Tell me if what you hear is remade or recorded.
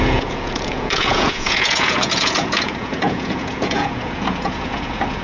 remade